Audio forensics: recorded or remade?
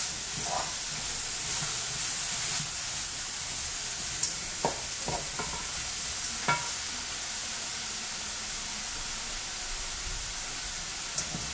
recorded